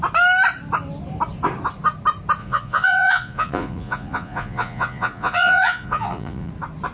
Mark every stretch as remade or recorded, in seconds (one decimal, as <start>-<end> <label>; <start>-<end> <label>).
0.0-2.4 recorded; 2.4-6.5 remade; 6.5-6.9 recorded